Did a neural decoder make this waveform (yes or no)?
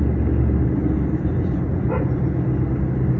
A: no